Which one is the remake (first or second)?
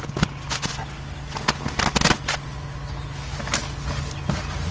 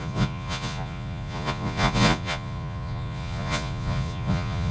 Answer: second